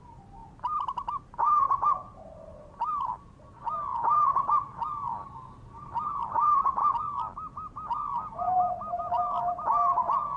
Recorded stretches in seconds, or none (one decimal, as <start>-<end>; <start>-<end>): 0.0-10.4

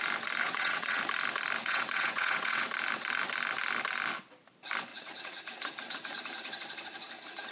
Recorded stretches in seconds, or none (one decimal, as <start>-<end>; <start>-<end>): 0.0-0.4; 1.0-1.6; 2.7-4.9; 5.4-7.5

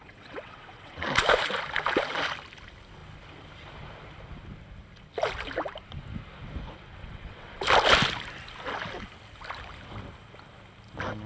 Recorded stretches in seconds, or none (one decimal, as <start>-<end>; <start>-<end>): 1.1-7.0; 7.6-11.3

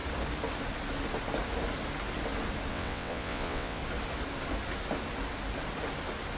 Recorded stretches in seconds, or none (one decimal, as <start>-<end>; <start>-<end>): 0.0-2.7; 3.8-6.4

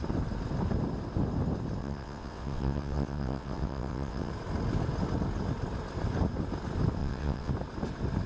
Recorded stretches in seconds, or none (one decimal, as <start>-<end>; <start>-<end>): 0.0-1.8; 4.3-7.0; 7.5-8.3

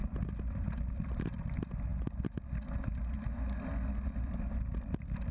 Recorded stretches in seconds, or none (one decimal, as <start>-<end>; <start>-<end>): 0.0-5.3

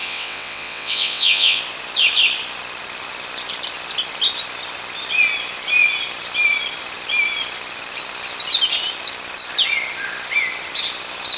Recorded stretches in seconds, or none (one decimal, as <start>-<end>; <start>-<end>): 1.6-11.4

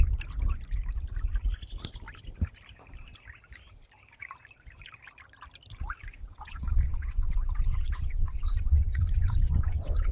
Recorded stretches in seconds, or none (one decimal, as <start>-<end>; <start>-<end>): 0.0-6.2